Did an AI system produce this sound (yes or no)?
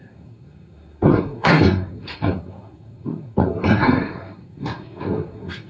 yes